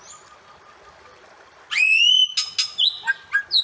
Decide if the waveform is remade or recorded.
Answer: recorded